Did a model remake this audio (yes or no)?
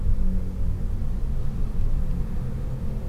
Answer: no